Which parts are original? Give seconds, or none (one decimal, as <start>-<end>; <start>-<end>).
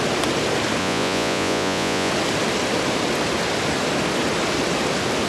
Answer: 0.0-0.8; 2.1-5.3